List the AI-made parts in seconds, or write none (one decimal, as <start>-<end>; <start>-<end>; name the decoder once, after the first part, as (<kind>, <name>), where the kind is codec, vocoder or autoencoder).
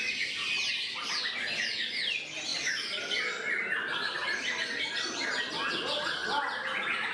none